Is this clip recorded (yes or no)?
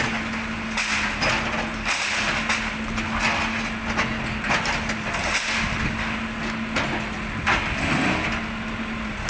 yes